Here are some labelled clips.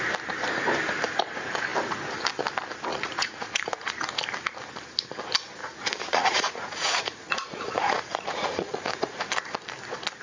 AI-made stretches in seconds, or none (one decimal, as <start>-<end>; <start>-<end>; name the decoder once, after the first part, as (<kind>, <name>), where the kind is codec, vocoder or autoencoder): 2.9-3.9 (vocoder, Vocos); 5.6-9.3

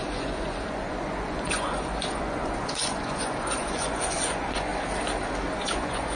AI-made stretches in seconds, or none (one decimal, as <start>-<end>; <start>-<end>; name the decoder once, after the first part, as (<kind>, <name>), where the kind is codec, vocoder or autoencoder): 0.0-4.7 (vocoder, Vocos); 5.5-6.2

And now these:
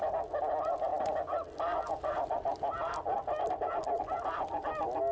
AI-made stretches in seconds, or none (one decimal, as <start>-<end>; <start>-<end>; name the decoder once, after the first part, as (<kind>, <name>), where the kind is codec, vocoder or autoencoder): none

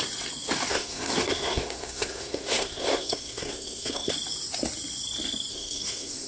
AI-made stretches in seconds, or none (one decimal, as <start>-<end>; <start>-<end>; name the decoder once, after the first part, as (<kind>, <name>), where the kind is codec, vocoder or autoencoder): 0.7-4.1 (codec, SNAC); 5.5-6.3